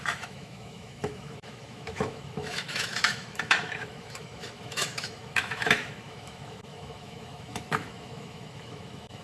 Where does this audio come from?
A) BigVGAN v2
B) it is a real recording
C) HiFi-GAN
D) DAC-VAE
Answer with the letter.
D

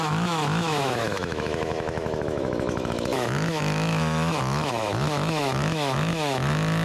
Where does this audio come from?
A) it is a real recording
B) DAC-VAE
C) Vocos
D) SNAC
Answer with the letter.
B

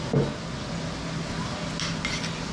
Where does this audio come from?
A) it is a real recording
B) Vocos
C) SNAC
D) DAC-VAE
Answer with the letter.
A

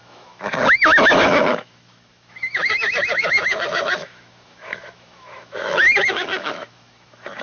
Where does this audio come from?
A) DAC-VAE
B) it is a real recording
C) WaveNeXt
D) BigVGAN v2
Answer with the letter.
A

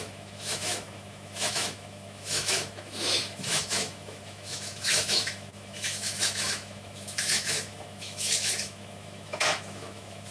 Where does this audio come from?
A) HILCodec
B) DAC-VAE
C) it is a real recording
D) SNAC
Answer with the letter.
B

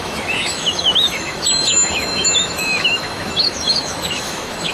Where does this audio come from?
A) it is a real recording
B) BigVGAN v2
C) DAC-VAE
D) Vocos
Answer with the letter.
C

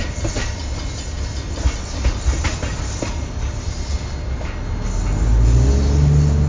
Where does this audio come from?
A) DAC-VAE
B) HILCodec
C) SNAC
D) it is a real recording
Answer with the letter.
D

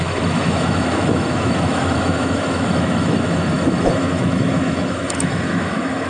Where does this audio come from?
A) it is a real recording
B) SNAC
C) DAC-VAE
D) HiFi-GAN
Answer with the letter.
C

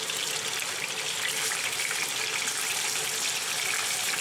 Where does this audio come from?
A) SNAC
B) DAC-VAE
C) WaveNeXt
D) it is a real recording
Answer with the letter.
D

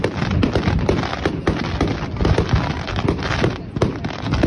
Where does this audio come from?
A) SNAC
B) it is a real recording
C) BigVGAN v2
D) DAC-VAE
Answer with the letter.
B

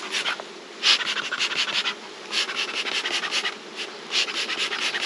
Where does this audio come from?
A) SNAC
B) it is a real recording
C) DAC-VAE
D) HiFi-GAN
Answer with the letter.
B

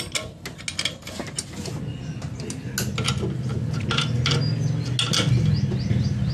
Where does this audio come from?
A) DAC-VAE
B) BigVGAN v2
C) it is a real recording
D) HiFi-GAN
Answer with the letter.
C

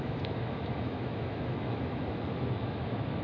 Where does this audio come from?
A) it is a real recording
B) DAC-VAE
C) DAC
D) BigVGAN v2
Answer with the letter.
B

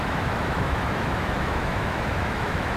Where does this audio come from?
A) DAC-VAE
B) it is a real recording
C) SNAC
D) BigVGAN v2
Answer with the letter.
A